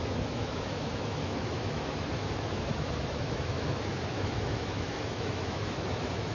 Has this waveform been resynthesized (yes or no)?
yes